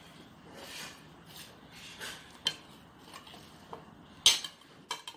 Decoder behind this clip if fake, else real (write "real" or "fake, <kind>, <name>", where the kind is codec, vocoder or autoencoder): real